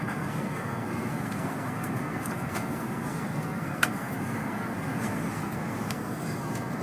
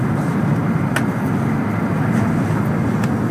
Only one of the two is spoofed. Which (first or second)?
first